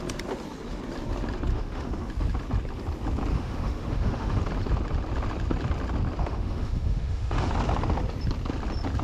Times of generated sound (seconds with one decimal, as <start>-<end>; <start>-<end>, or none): 1.5-2.1; 3.3-4.4; 6.2-7.5